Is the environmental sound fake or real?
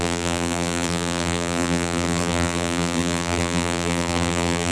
fake